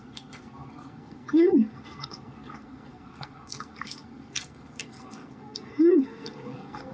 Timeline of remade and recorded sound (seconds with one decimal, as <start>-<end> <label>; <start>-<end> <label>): 0.0-6.9 remade